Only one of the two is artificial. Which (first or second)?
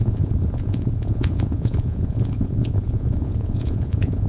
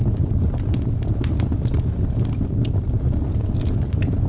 first